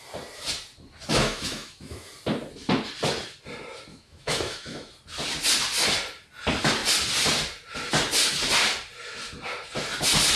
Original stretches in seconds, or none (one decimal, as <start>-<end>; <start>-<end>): 0.0-1.1; 2.1-3.9; 4.9-10.4